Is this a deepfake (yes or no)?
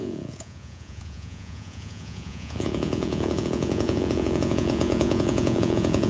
yes